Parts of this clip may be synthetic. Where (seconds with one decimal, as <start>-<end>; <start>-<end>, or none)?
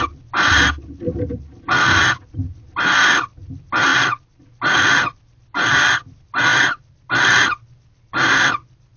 none